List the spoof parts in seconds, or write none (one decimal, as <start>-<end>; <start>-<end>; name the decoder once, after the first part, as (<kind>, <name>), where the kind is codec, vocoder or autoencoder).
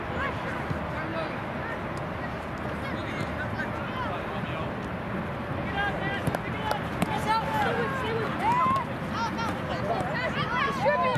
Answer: none